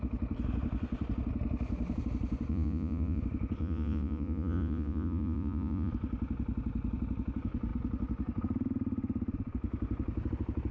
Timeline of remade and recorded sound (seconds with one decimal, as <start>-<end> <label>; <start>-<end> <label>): 0.0-2.5 recorded; 2.5-3.2 remade; 3.2-3.6 recorded; 3.6-5.9 remade; 5.9-10.7 recorded